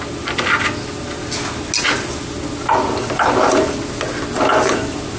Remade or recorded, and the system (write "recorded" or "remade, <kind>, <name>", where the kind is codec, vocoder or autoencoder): recorded